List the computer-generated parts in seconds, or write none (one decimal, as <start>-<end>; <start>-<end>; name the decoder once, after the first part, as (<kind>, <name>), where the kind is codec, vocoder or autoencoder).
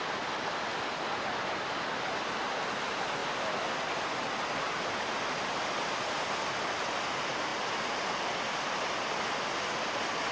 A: none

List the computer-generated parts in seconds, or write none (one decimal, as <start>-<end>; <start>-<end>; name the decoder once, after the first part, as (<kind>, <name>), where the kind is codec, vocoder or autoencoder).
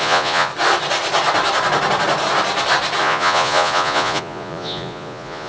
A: 0.0-0.5 (vocoder, Vocos); 3.0-5.5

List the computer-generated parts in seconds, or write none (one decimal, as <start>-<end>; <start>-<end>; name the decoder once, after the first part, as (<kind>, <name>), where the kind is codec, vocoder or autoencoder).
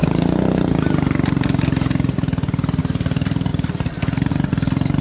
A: 3.5-4.3 (vocoder, BigVGAN v2)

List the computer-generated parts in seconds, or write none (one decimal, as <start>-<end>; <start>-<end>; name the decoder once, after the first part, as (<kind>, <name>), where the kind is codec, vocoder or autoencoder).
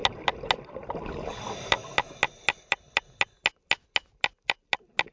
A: none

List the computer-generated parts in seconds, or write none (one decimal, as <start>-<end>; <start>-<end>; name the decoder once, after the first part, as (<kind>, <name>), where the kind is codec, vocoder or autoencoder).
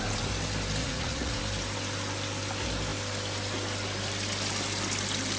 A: 0.8-1.4 (vocoder, Vocos)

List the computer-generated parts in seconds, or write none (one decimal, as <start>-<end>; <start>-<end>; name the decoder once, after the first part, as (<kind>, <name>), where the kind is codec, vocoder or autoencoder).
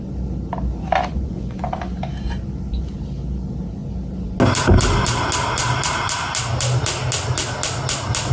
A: 1.1-1.6 (vocoder, Vocos)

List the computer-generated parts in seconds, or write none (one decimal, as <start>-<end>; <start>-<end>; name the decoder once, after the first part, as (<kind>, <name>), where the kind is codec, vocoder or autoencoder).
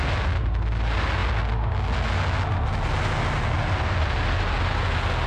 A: none